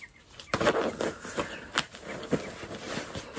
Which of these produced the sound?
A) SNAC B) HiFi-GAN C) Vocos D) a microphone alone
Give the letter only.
D